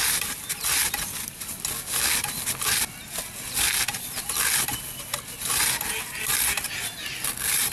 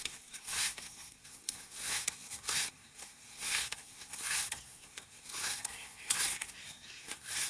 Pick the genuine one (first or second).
first